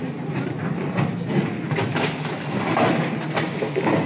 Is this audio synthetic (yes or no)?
no